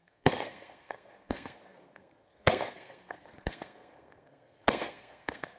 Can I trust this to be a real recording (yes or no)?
no